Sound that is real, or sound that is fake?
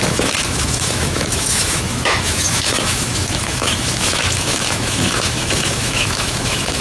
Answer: fake